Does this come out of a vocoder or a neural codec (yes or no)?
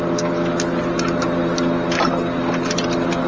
no